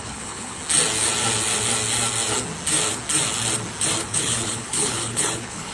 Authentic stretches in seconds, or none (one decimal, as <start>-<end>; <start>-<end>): 0.6-4.0